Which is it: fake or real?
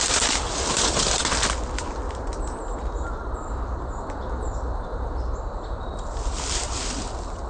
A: real